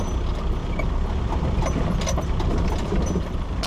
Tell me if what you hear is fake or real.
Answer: real